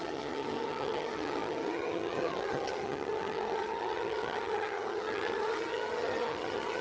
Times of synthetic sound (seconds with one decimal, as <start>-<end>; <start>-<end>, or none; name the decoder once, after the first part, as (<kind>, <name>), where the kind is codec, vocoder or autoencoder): 0.0-6.8 (vocoder, HiFi-GAN)